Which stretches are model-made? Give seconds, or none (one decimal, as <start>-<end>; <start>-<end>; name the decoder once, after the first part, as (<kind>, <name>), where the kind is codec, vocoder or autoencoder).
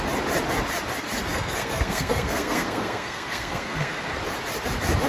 1.3-4.1 (codec, SNAC)